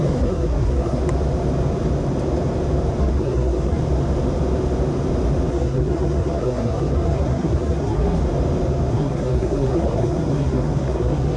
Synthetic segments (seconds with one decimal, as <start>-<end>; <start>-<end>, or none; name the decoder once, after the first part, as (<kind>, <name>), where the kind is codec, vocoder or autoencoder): 0.0-1.0 (codec, SNAC); 3.0-3.8; 5.5-8.2; 8.9-11.4